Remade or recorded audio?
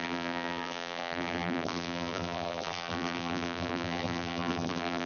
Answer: remade